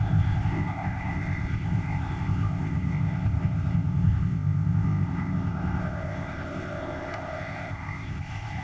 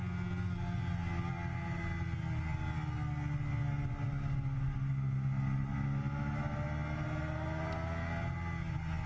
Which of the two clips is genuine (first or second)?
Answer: second